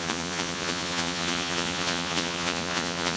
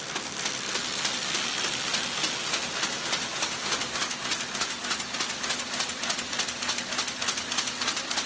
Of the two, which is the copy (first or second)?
first